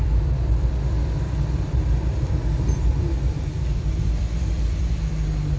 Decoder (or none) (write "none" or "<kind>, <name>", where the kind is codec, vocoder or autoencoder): vocoder, BigVGAN v2